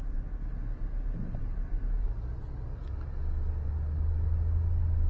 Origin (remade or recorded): recorded